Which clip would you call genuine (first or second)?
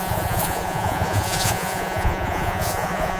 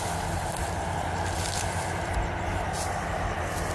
second